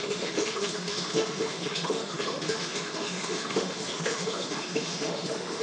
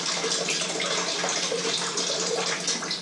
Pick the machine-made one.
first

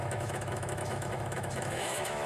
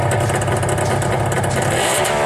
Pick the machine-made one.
first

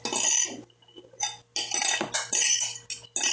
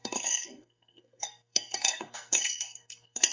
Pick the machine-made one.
second